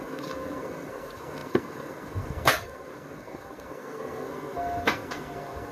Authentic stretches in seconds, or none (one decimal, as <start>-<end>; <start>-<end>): none